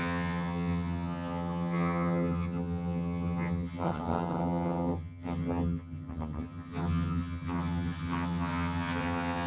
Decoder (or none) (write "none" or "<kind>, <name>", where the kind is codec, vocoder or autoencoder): vocoder, HiFi-GAN